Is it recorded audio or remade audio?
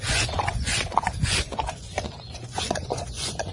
remade